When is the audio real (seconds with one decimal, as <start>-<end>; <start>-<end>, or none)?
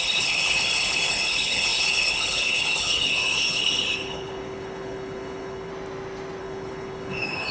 5.7-6.4